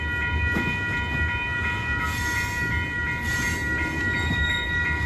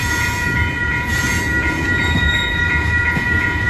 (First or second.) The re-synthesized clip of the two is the second